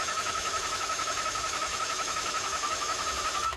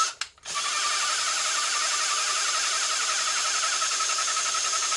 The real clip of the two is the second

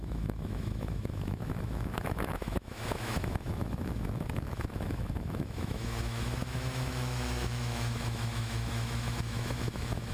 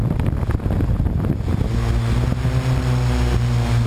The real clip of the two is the second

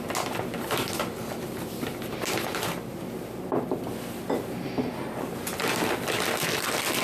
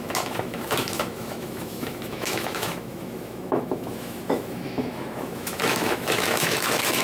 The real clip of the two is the first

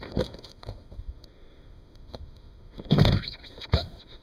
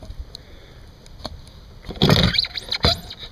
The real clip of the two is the second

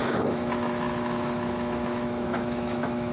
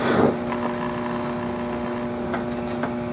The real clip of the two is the second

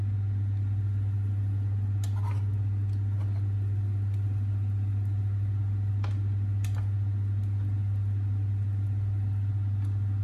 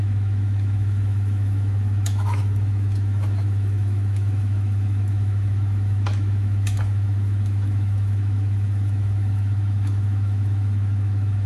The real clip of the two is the first